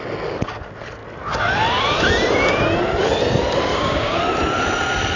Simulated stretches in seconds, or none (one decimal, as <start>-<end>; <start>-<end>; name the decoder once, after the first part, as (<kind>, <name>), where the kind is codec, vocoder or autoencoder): 3.7-4.2 (codec, DAC)